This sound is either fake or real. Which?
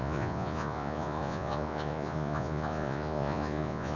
fake